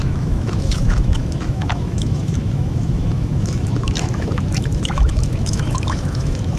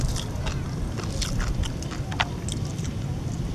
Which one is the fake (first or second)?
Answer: first